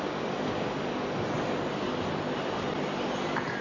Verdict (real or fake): real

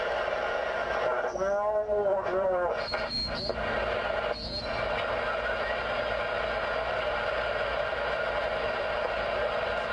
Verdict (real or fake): real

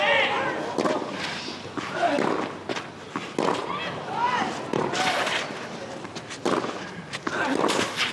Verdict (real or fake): real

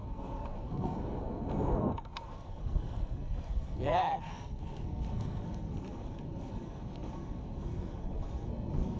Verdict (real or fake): fake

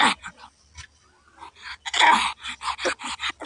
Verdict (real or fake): real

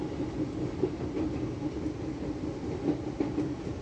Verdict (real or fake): real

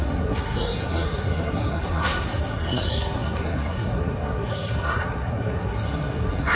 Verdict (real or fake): fake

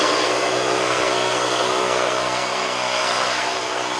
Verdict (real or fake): fake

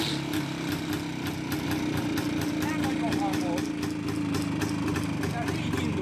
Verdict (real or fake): real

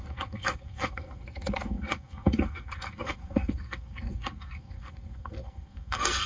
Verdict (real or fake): fake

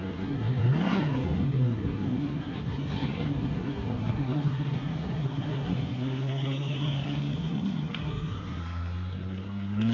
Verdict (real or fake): fake